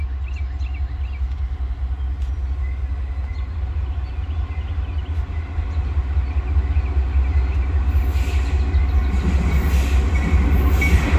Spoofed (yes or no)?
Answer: no